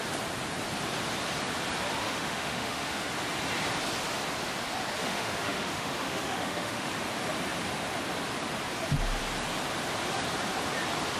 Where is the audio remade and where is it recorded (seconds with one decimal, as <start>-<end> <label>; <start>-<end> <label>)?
0.0-2.0 recorded; 2.0-3.1 remade; 3.1-5.0 recorded; 5.0-6.9 remade; 6.9-11.2 recorded